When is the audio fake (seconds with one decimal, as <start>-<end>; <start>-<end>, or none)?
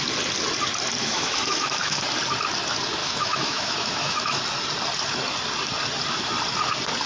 1.0-2.0; 3.0-4.4